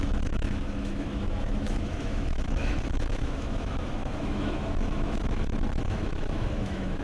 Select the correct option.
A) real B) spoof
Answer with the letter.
B